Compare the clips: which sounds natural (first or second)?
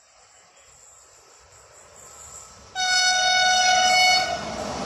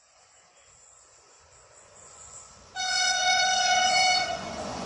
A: first